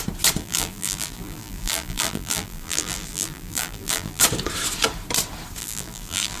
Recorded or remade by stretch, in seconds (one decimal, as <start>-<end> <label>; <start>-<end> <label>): 0.0-0.4 recorded; 0.4-4.2 remade; 4.2-5.6 recorded; 5.6-6.4 remade